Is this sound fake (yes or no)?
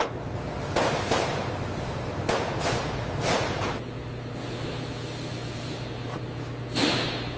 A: no